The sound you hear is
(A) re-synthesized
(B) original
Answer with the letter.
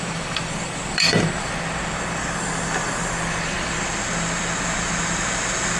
A